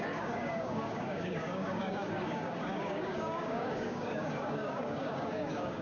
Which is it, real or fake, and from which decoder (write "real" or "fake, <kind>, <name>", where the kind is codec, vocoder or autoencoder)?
fake, codec, DAC